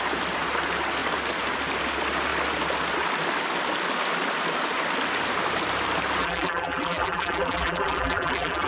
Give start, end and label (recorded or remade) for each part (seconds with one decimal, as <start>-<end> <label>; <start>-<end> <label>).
0.0-6.2 recorded; 6.2-8.7 remade